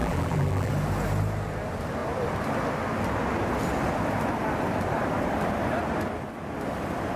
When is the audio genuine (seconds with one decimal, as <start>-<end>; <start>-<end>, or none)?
0.7-7.2